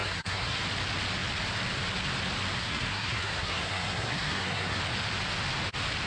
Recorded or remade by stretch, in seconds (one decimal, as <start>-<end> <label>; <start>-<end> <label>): 0.0-0.6 remade; 0.6-2.6 recorded; 2.6-4.8 remade; 4.8-6.1 recorded